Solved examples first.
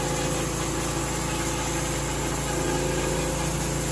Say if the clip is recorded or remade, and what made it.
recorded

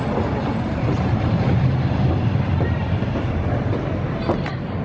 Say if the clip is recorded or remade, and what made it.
recorded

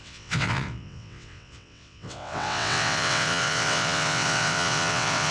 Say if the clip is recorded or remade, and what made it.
remade, vocoder, WaveNeXt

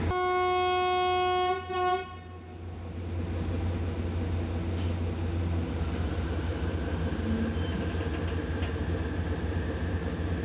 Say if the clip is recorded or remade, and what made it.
recorded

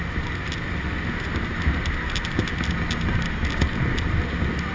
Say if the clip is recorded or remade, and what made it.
recorded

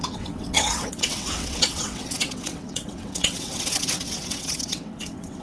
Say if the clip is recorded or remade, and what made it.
remade, vocoder, WaveNeXt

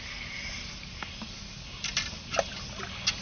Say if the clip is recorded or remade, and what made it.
recorded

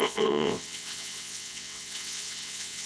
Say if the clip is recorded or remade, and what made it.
remade, vocoder, WaveNeXt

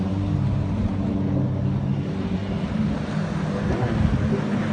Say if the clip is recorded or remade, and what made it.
recorded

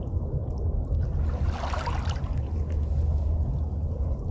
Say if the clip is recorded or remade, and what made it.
recorded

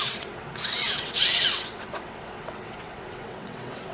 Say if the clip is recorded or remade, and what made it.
remade, vocoder, WaveNeXt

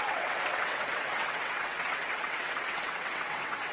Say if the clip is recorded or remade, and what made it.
remade, vocoder, WaveNeXt